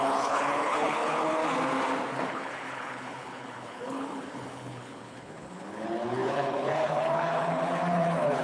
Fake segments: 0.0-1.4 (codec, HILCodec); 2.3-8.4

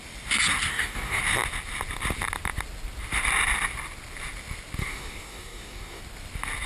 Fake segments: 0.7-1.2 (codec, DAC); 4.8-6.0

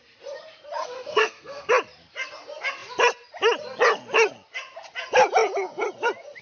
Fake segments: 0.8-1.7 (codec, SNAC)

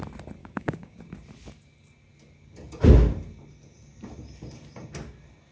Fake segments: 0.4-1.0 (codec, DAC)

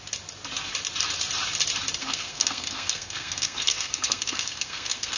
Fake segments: 2.0-5.2 (codec, SNAC)